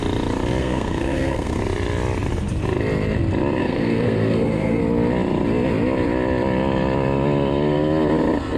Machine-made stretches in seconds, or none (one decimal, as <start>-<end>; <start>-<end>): 0.6-1.6; 3.6-4.8